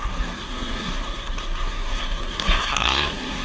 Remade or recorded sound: remade